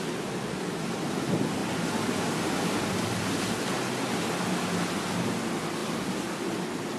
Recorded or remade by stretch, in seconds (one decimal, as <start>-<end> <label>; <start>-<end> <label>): 0.0-7.0 recorded